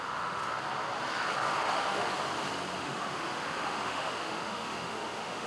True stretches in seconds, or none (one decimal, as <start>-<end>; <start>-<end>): 0.4-1.7; 2.1-2.8